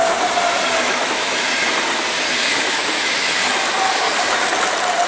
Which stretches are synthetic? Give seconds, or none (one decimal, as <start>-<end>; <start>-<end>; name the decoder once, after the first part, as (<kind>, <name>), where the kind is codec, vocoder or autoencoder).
0.8-1.5 (autoencoder, DAC-VAE); 2.4-3.5